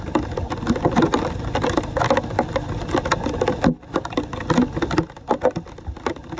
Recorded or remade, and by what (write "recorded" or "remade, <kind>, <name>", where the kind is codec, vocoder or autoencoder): recorded